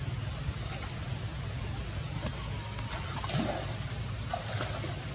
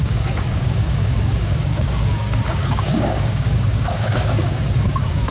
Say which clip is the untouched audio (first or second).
first